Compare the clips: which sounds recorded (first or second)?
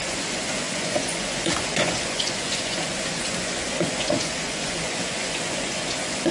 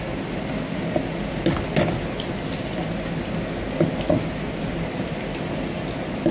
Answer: second